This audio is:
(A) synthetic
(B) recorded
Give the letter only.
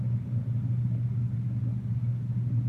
B